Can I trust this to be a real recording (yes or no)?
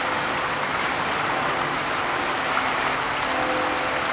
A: yes